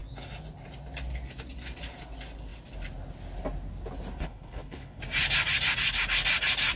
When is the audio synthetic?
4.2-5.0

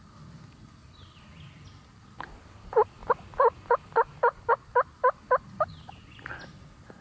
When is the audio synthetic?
none

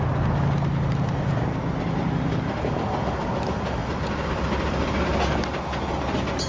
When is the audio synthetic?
none

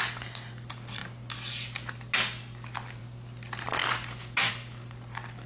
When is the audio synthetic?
none

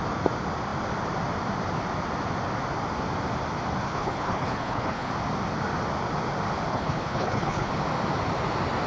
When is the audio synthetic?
3.8-5.1; 6.7-7.7

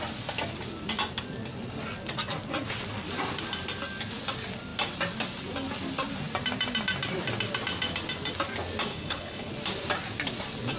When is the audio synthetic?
8.9-9.5

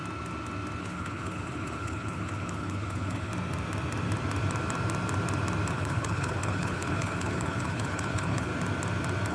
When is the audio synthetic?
0.8-3.3; 5.7-8.5